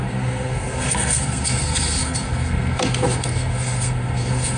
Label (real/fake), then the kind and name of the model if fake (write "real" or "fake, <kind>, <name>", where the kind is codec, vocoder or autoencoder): fake, codec, SNAC